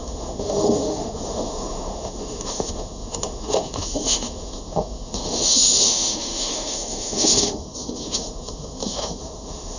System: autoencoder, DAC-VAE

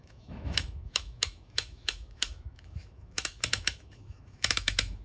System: autoencoder, DAC-VAE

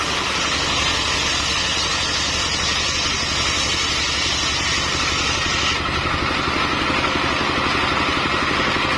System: none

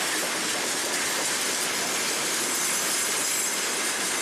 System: none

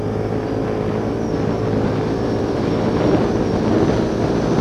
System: none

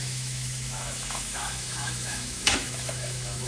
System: autoencoder, DAC-VAE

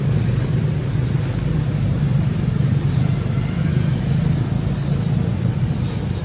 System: none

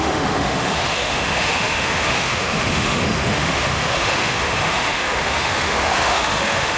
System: autoencoder, DAC-VAE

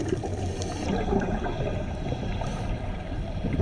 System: none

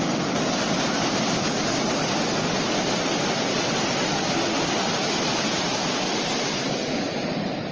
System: none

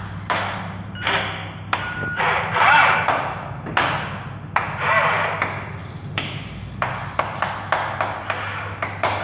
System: none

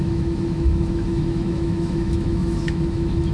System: autoencoder, DAC-VAE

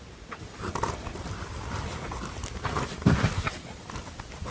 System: none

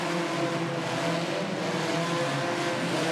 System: none